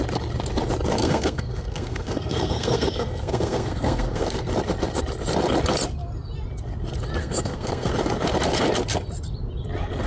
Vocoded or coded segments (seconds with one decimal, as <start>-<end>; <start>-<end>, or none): 1.0-4.5; 7.2-7.9